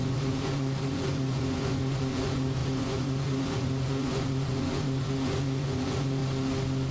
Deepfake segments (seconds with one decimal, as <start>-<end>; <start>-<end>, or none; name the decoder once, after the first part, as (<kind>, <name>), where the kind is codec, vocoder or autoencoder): 0.0-6.2 (vocoder, Vocos)